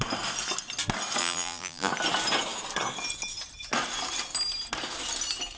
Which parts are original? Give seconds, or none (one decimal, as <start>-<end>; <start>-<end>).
0.0-1.2; 1.9-5.6